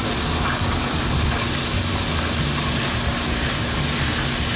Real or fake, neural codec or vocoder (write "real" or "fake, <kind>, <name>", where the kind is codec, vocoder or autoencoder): real